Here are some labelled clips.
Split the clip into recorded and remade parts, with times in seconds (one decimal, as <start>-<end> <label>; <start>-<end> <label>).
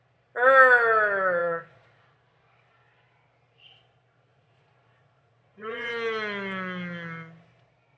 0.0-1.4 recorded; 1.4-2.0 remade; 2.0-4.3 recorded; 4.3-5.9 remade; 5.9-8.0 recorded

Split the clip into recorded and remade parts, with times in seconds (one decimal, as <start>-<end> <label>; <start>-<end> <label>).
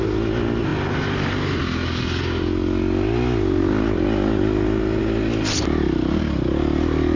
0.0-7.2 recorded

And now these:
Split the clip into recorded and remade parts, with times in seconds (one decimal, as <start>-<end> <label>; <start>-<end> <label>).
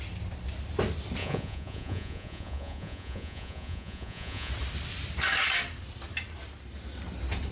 0.0-1.2 recorded; 1.2-4.5 remade; 4.5-7.5 recorded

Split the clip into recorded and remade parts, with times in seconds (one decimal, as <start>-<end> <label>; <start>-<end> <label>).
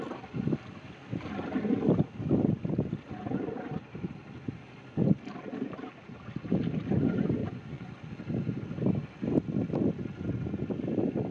0.0-7.4 recorded; 7.4-8.1 remade; 8.1-11.3 recorded